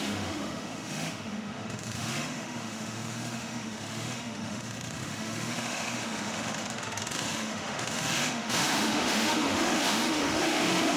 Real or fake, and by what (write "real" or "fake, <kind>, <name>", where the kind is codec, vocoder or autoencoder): fake, autoencoder, DAC-VAE